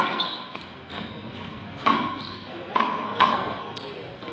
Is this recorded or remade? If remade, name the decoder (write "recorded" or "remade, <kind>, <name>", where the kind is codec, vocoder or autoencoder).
remade, codec, SNAC